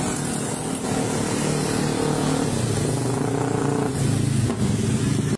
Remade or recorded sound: recorded